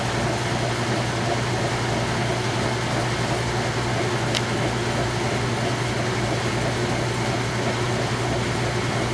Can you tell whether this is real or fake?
real